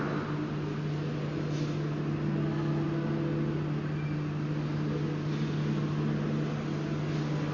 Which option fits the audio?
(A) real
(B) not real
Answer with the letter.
A